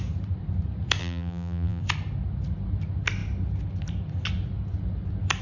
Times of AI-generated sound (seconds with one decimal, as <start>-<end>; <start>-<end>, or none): 1.0-1.8